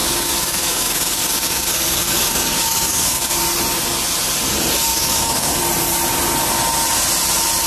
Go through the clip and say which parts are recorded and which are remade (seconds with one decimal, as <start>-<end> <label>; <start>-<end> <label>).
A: 0.0-3.4 remade; 3.4-4.9 recorded; 4.9-5.6 remade; 5.6-7.7 recorded